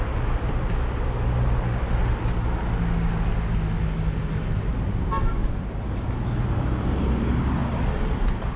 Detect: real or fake real